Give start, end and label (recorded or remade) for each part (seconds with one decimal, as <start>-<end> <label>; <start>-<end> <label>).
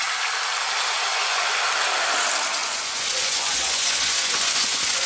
0.0-1.1 recorded; 1.1-1.6 remade; 1.6-2.6 recorded; 2.6-5.1 remade